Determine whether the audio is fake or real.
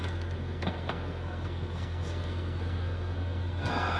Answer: fake